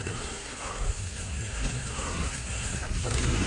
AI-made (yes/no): yes